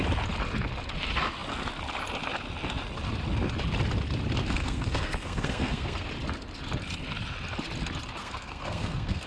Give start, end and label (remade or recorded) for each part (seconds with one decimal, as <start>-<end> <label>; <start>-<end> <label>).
0.0-4.4 recorded; 4.4-6.1 remade; 6.1-8.2 recorded; 8.2-9.3 remade